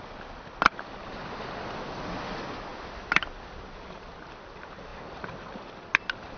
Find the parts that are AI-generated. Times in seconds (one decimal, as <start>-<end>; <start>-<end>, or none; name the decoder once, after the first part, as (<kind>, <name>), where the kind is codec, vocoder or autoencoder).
none